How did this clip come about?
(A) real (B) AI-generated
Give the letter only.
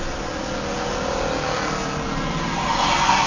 A